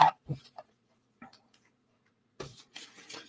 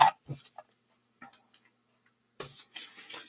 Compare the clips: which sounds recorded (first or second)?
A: second